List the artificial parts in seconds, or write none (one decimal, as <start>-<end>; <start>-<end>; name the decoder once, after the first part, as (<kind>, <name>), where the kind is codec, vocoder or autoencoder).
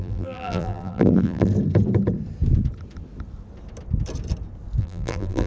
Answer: 0.0-1.5 (vocoder, BigVGAN v2); 4.8-5.5